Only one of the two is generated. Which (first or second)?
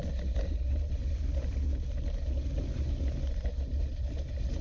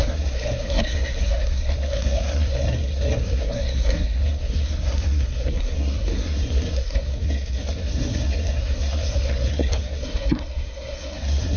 second